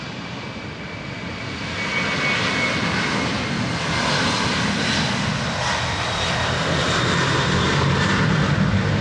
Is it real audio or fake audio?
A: real